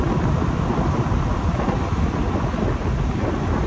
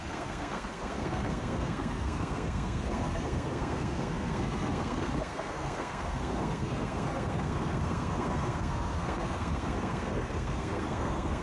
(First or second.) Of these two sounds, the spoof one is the second